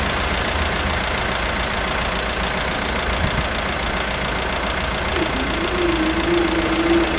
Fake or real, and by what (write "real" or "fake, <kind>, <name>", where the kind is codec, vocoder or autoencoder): real